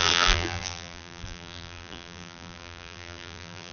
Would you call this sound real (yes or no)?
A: no